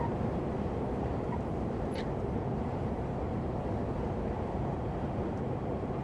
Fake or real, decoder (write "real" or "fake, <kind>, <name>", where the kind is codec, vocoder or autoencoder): fake, vocoder, BigVGAN v2